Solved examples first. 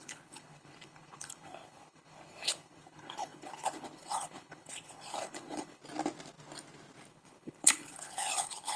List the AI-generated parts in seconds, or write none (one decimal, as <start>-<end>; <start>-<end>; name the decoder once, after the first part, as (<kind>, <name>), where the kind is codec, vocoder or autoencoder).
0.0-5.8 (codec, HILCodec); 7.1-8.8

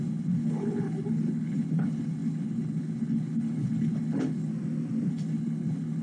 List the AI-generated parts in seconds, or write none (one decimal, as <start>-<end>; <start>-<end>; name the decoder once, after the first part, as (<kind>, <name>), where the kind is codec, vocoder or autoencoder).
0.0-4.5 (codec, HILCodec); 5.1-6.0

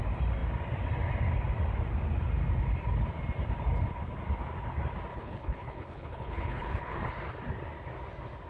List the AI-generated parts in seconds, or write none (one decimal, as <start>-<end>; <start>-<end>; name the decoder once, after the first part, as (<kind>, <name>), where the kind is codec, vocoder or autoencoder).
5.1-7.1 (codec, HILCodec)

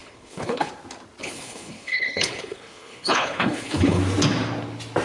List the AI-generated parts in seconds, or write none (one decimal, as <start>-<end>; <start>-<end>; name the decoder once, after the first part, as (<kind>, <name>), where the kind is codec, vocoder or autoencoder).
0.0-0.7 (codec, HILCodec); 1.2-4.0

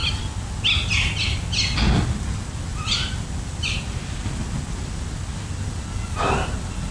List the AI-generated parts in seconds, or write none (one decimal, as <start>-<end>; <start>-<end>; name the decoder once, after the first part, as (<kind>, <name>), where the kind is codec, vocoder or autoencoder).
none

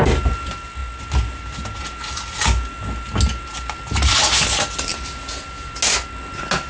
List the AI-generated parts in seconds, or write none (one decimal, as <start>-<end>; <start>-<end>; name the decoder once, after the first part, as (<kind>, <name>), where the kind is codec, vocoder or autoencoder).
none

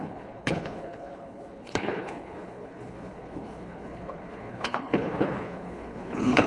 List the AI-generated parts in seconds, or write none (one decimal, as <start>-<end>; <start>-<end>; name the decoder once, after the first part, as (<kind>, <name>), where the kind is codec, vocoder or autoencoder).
0.0-6.5 (codec, HILCodec)